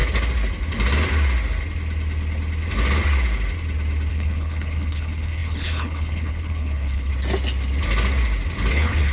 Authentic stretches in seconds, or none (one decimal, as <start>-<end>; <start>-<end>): 0.0-4.1; 7.1-8.7